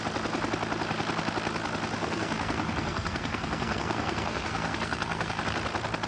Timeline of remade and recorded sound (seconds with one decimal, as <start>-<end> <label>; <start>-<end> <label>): 0.0-2.0 recorded; 2.0-5.4 remade; 5.4-6.1 recorded